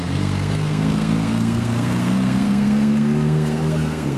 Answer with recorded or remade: remade